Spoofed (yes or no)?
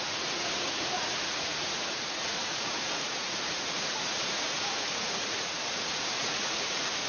yes